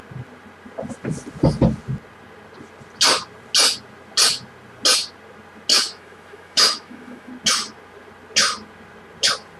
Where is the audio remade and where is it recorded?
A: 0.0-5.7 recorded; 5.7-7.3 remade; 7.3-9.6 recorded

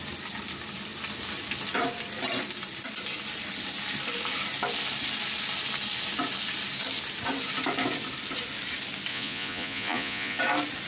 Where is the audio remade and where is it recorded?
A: 0.0-9.1 recorded; 9.1-10.4 remade; 10.4-10.9 recorded

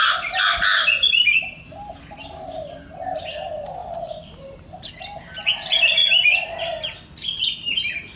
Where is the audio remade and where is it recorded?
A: 0.0-3.8 recorded; 3.8-4.9 remade; 4.9-8.2 recorded

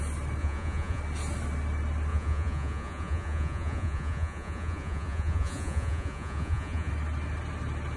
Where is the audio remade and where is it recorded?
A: 0.0-0.4 recorded; 0.4-1.0 remade; 1.0-2.1 recorded; 2.1-6.9 remade; 6.9-8.0 recorded

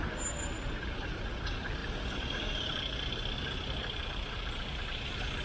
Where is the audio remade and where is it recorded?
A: 0.0-5.4 recorded

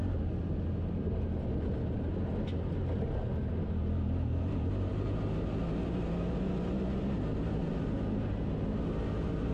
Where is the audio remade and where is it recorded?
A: 0.0-7.6 recorded; 7.6-8.5 remade; 8.5-9.5 recorded

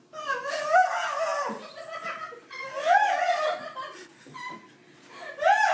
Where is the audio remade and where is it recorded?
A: 0.0-5.7 recorded

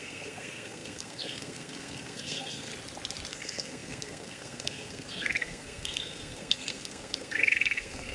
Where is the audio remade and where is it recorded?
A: 0.0-2.7 remade; 2.7-3.3 recorded; 3.3-8.1 remade